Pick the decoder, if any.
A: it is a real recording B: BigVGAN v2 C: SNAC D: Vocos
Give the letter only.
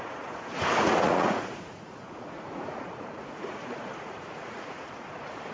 D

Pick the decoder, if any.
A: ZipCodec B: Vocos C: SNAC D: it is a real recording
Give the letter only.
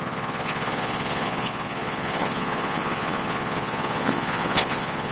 B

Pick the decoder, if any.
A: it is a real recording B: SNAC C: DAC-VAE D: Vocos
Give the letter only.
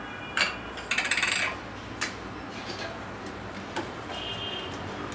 A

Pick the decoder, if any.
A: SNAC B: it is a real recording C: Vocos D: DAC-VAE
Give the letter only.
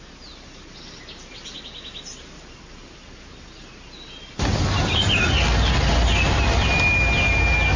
B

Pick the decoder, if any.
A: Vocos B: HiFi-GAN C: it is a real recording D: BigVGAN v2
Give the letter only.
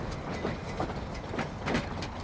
C